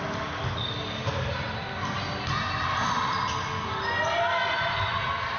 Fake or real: real